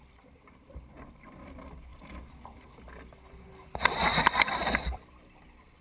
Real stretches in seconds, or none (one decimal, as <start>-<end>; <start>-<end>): 0.0-5.8